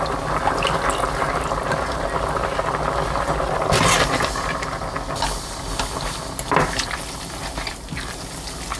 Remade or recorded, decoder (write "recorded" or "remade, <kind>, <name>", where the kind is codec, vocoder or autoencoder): recorded